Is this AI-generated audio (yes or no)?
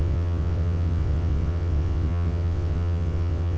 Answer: yes